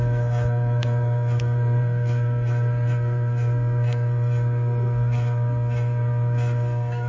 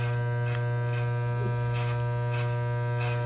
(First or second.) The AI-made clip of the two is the first